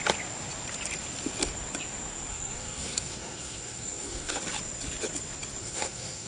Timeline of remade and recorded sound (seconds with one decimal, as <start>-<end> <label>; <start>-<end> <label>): 0.0-2.3 recorded; 2.3-4.4 remade; 4.4-5.6 recorded; 5.6-6.3 remade